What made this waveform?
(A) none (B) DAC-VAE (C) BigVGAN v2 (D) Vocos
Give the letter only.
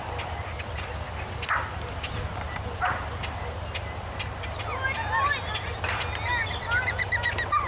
A